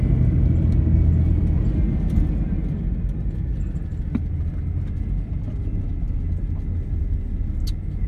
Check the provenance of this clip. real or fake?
real